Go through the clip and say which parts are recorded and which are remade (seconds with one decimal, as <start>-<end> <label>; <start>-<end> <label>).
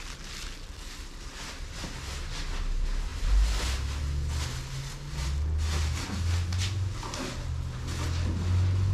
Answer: 0.0-8.9 recorded